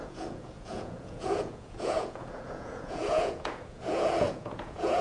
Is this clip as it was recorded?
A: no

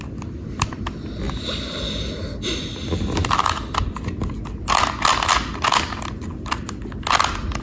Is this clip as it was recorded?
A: yes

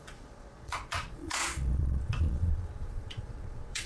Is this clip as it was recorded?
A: no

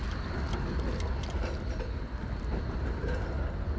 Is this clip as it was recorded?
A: yes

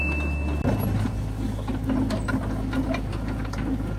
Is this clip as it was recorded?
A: yes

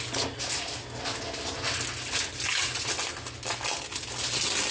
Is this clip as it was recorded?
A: yes